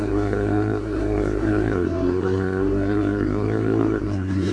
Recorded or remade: remade